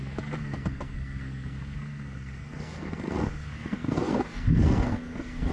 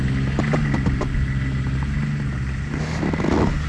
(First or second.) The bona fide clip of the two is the second